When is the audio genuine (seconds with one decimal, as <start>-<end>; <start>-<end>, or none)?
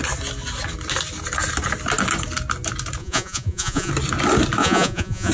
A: 0.0-3.0; 3.9-4.6